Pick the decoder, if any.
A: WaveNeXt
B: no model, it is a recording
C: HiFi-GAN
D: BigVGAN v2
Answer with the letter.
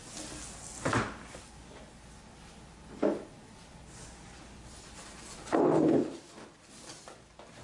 B